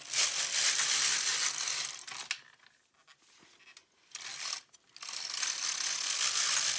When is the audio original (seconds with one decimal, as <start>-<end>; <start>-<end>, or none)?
0.0-6.8